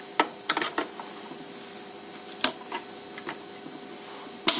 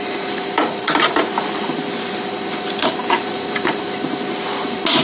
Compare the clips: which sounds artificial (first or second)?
second